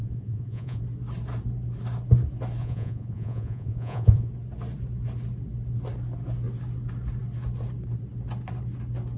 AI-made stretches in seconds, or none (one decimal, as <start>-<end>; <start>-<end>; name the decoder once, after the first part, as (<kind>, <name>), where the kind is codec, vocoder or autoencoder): 0.0-0.8 (vocoder, Vocos); 2.6-4.3